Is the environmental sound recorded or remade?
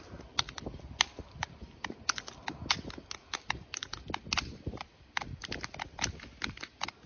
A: recorded